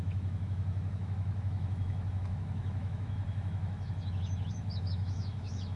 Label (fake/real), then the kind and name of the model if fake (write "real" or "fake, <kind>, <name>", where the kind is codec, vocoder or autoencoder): fake, autoencoder, DAC-VAE